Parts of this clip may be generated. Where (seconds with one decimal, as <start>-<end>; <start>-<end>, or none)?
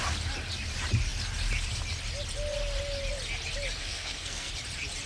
3.8-4.5